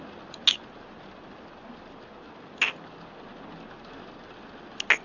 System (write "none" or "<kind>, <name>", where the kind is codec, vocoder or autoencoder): none